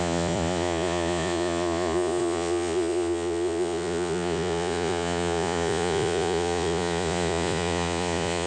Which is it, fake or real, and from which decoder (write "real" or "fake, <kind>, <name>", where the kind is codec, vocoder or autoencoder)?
fake, vocoder, Vocos